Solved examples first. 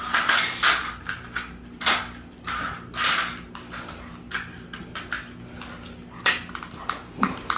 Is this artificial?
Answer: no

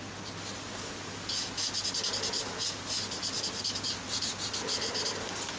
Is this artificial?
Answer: no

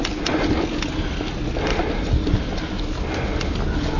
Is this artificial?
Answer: no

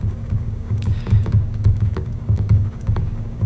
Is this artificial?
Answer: yes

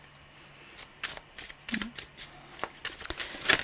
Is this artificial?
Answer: no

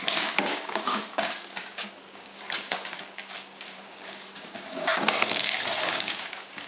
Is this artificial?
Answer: yes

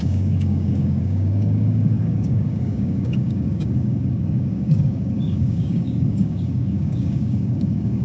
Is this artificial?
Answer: yes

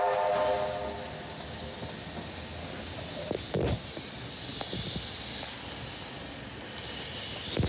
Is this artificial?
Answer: no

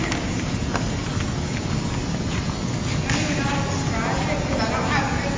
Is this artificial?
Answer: no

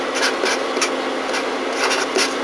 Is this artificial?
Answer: no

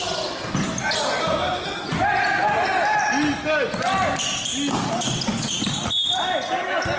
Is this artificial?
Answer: no